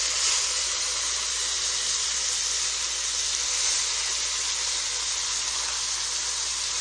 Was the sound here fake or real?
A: real